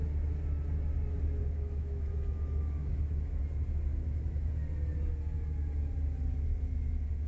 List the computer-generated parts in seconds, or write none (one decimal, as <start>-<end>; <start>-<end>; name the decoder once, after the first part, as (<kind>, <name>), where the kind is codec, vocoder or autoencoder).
1.4-3.4 (autoencoder, DAC-VAE); 3.9-4.5